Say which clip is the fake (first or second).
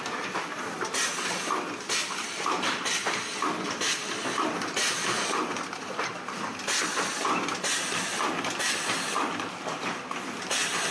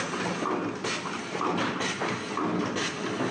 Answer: first